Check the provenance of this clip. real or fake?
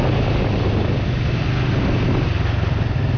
real